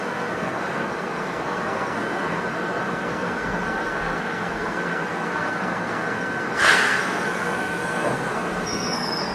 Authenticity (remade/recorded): remade